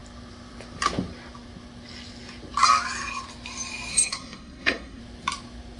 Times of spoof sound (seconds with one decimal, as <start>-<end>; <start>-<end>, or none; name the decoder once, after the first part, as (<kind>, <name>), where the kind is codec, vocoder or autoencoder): 3.9-5.0 (codec, SNAC)